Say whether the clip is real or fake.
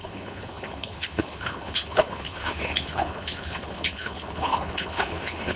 fake